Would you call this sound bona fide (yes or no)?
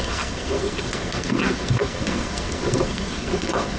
no